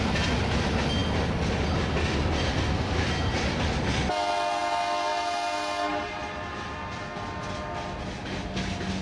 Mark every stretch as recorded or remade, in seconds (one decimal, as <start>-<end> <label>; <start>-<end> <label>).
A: 0.0-9.0 recorded

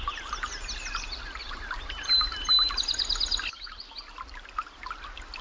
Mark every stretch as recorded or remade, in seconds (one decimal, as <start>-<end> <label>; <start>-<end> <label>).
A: 0.0-1.4 recorded; 1.4-2.0 remade; 2.0-5.4 recorded